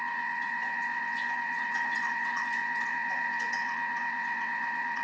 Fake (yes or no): yes